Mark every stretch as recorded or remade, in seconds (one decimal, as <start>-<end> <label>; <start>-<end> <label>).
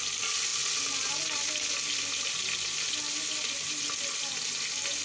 0.0-5.0 recorded